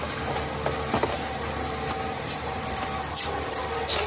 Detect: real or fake real